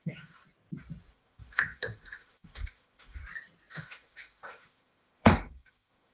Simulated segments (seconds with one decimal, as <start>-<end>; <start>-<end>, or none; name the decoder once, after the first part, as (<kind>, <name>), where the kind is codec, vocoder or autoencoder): 0.0-0.4 (autoencoder, DAC-VAE); 1.1-3.2; 3.7-6.1